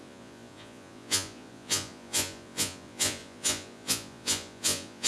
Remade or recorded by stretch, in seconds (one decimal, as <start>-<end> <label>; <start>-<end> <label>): 0.0-5.1 remade